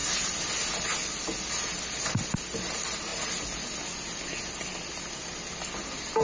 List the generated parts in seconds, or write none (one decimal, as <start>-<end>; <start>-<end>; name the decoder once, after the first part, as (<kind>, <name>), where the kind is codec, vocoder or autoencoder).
none

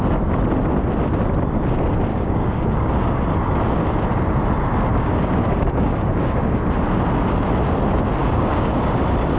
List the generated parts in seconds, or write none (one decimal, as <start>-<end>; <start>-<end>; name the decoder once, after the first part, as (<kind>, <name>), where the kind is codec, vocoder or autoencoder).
2.1-3.2 (codec, DAC); 4.9-6.6; 8.2-9.0